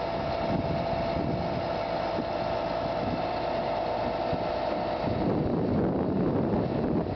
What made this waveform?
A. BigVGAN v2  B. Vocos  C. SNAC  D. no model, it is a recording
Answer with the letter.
D